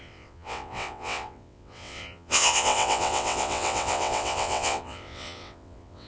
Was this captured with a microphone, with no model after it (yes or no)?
no